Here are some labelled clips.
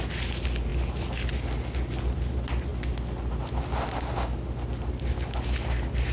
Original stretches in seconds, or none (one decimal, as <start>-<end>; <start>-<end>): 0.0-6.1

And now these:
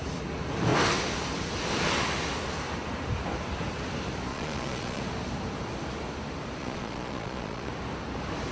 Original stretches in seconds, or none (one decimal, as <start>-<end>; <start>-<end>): 0.0-4.3; 5.0-6.6; 7.7-8.5

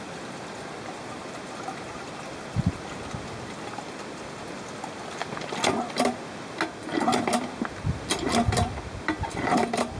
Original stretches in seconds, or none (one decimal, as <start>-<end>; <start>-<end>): 0.0-10.0

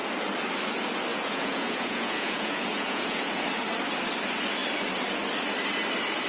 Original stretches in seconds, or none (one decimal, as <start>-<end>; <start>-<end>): 0.0-1.1; 3.4-6.3